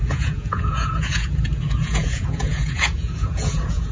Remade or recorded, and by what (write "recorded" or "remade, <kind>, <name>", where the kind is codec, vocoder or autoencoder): remade, vocoder, Vocos